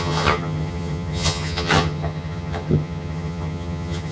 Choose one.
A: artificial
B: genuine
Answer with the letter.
A